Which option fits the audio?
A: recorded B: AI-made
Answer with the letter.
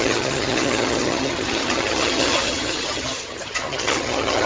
B